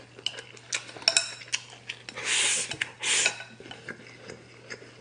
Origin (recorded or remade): recorded